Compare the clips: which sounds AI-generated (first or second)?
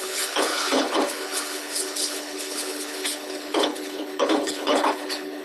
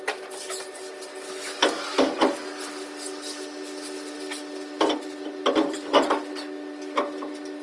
first